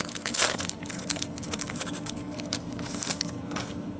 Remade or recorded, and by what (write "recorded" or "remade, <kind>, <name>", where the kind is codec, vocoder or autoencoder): remade, codec, SNAC